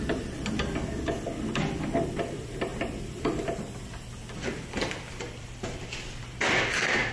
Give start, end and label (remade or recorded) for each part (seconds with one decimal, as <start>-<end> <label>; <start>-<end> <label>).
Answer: 0.0-2.7 recorded; 2.7-7.1 remade